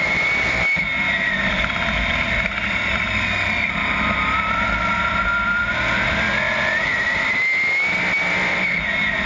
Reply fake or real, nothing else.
real